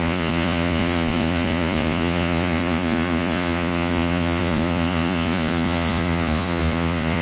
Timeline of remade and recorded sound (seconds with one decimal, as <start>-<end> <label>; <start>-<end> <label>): 0.0-7.2 remade